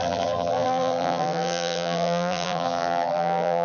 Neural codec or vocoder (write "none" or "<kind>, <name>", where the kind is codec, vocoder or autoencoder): vocoder, BigVGAN v2